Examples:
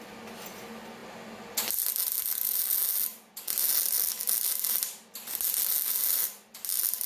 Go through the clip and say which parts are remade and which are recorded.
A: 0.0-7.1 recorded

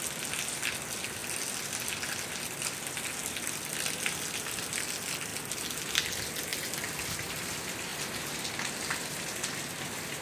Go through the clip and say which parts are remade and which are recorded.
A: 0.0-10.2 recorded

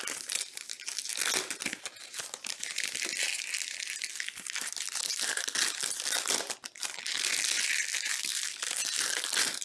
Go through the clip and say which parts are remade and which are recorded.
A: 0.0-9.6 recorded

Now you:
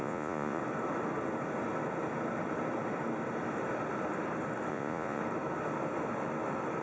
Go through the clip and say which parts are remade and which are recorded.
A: 0.0-0.6 remade; 0.6-4.7 recorded; 4.7-5.2 remade; 5.2-6.8 recorded

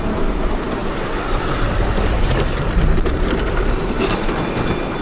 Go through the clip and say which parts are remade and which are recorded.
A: 0.0-5.0 recorded